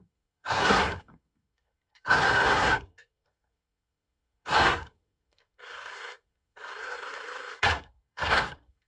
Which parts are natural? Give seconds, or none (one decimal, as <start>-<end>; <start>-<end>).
none